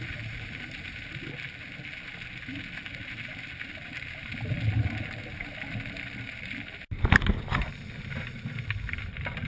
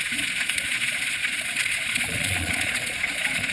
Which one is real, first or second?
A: first